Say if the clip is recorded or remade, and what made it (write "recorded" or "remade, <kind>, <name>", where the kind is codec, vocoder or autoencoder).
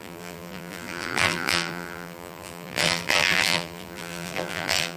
remade, vocoder, BigVGAN v2